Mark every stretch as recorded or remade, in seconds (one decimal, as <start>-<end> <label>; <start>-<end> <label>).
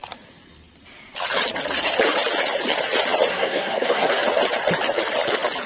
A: 0.0-3.3 recorded; 3.3-4.1 remade; 4.1-5.7 recorded